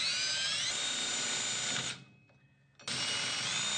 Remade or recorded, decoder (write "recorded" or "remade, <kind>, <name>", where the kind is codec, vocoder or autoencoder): recorded